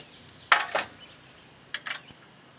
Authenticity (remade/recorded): recorded